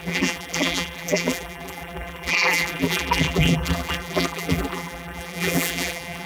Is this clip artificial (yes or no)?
yes